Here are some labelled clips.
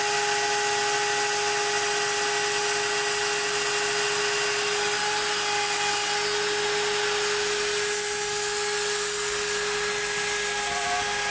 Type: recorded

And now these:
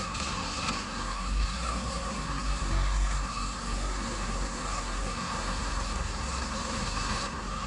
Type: remade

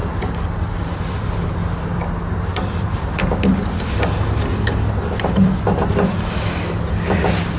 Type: recorded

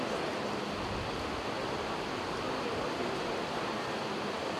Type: recorded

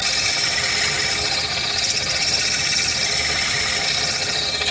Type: recorded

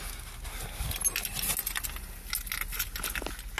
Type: recorded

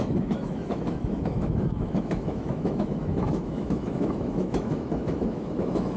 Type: remade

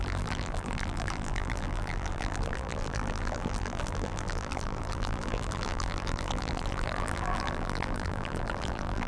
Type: remade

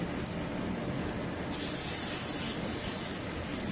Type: recorded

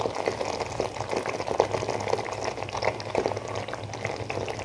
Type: recorded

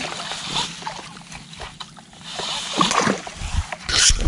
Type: recorded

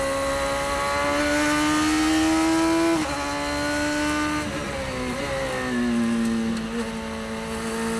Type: recorded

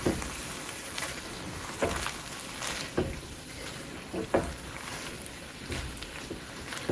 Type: recorded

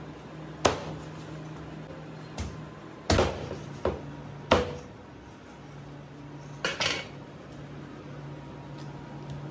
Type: recorded